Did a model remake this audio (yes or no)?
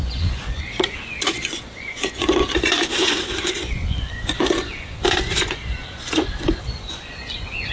yes